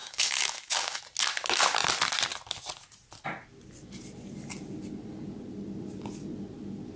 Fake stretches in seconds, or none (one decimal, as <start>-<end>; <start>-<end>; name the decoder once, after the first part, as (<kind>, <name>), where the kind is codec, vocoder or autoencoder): 0.0-1.0 (codec, DAC)